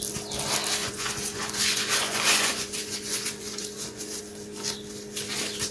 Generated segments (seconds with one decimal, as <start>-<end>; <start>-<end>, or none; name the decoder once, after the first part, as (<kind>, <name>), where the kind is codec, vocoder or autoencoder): 0.8-4.2 (vocoder, Vocos)